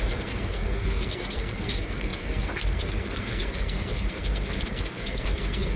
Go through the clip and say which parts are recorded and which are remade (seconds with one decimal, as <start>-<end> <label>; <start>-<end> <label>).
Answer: 0.0-5.8 remade